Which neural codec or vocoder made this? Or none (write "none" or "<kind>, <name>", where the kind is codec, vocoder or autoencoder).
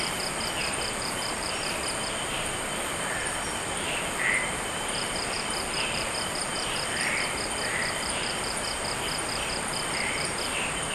vocoder, BigVGAN v2